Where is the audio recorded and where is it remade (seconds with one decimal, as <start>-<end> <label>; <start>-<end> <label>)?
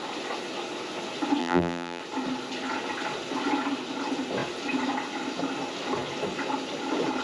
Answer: 0.0-1.4 recorded; 1.4-2.0 remade; 2.0-7.2 recorded